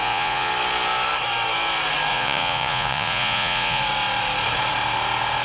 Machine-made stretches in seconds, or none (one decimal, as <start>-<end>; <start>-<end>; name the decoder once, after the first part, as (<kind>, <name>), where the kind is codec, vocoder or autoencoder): 0.0-0.5 (vocoder, Vocos); 2.1-3.8